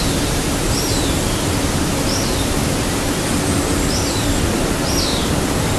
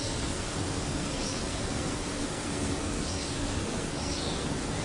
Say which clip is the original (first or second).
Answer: first